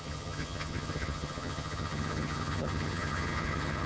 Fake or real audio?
fake